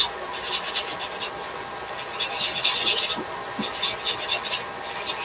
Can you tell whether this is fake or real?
real